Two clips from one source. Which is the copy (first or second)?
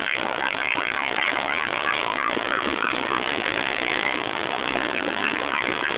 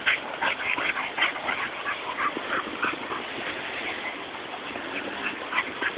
first